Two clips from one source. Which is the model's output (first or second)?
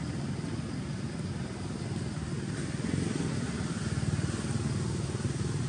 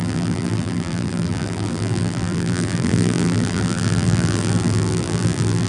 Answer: second